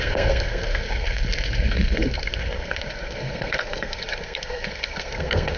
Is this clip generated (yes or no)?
yes